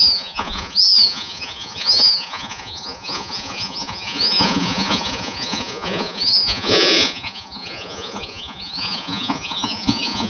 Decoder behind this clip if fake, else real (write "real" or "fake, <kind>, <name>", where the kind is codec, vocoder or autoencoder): fake, vocoder, Vocos